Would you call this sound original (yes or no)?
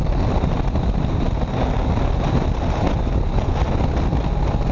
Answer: yes